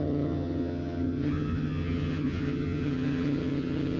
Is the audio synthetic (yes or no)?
yes